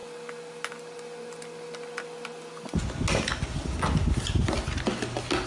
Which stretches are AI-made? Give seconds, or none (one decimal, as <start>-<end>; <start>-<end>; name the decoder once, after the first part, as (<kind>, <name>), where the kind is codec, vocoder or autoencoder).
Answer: none